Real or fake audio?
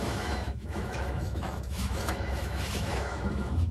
fake